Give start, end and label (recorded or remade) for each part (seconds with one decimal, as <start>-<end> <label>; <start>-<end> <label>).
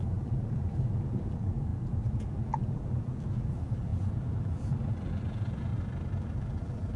0.0-5.7 remade; 5.7-6.2 recorded; 6.2-7.0 remade